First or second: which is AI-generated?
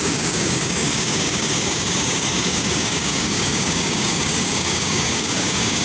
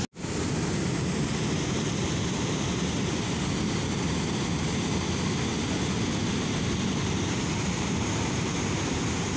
first